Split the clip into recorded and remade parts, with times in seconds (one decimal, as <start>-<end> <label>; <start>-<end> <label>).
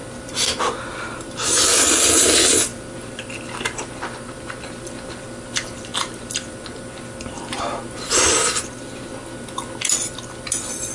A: 0.0-10.9 recorded